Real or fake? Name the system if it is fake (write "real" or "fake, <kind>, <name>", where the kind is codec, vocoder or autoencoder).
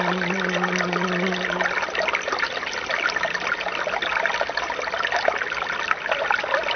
real